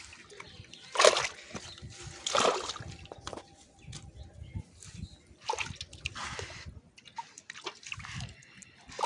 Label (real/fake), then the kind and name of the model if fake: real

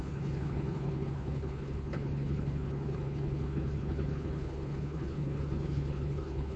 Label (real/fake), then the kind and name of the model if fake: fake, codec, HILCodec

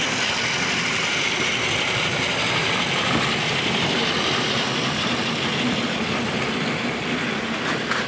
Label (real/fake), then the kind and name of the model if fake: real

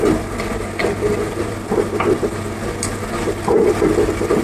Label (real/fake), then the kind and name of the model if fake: real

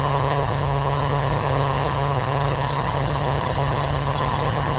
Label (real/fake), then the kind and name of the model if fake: fake, vocoder, HiFi-GAN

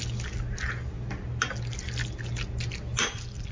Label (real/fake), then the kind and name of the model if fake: real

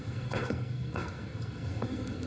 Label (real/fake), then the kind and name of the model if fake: fake, codec, SNAC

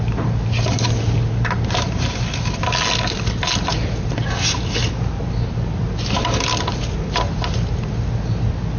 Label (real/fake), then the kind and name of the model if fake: real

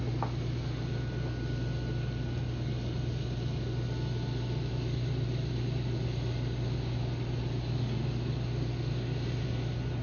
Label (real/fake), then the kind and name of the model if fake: real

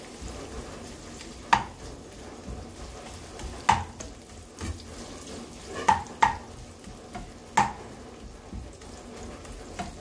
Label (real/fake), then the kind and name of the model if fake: real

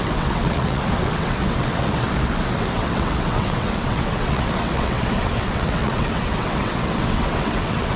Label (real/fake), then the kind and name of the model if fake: fake, vocoder, WaveNeXt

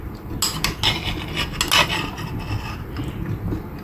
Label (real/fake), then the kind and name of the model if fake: real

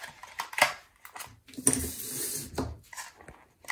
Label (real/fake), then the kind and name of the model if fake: real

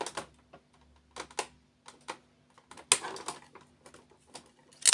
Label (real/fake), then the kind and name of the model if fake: real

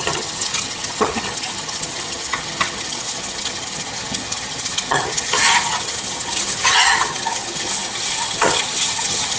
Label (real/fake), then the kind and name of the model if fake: fake, vocoder, HiFi-GAN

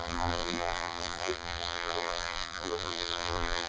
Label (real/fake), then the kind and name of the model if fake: fake, vocoder, BigVGAN v2